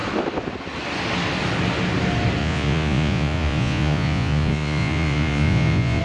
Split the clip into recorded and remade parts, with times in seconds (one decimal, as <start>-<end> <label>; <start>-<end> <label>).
0.0-2.4 recorded; 2.4-6.0 remade